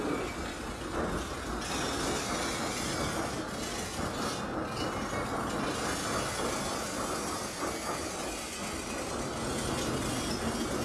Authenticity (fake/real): real